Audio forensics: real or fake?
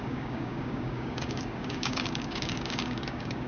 fake